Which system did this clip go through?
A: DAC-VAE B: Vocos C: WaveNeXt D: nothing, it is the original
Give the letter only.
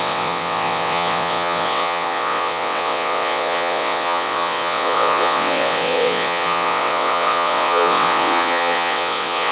C